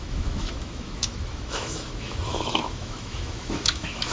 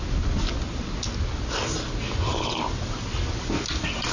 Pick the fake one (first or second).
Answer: first